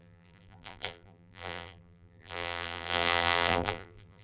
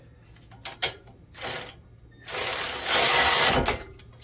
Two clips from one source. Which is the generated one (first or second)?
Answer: first